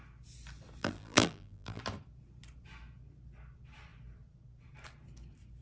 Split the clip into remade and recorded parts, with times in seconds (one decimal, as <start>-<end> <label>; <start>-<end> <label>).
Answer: 0.0-0.8 recorded; 0.8-1.8 remade; 1.8-5.6 recorded